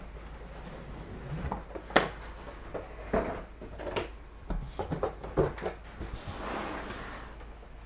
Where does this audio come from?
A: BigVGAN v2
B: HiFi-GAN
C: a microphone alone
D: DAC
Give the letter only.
C